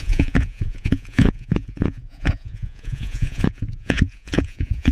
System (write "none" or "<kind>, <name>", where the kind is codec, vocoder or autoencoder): vocoder, Vocos